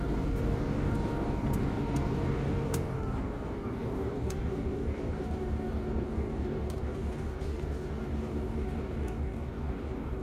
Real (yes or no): no